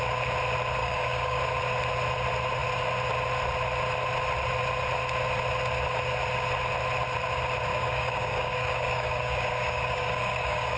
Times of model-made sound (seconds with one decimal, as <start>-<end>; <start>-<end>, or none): 0.8-1.4; 7.7-10.8